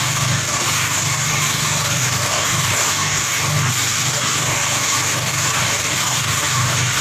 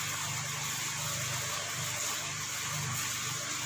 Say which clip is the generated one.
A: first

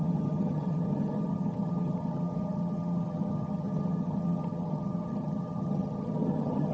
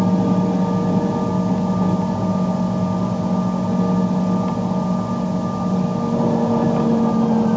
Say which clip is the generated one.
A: first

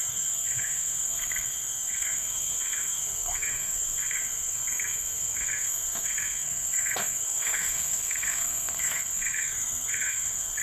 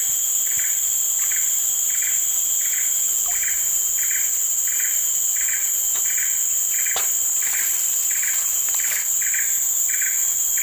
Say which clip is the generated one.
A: first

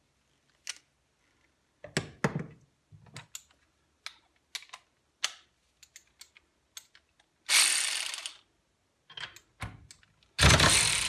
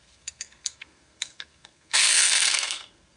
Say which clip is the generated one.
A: second